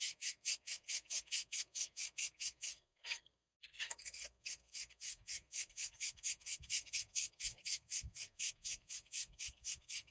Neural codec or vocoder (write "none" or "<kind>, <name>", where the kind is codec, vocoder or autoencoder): codec, SNAC